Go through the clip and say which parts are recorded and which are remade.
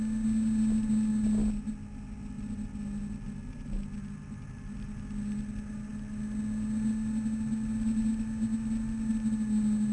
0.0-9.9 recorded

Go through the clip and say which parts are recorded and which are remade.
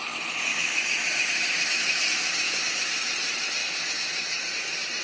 0.0-0.5 recorded; 0.5-2.9 remade; 2.9-3.6 recorded; 3.6-4.5 remade; 4.5-5.0 recorded